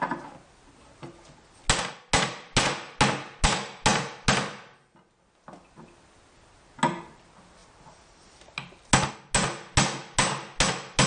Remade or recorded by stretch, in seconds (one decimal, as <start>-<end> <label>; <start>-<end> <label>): 0.0-11.1 recorded